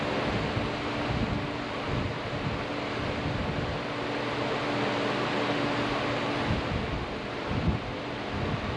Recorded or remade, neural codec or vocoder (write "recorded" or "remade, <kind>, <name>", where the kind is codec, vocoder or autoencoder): recorded